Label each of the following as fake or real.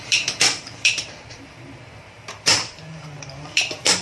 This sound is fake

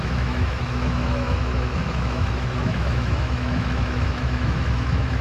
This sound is fake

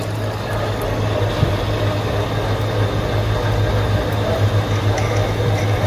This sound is real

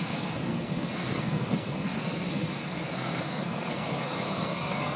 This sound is fake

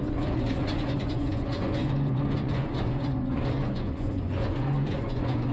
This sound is fake